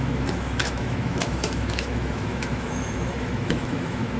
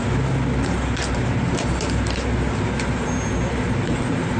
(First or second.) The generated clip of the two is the first